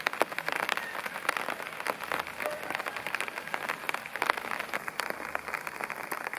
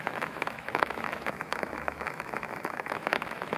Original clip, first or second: first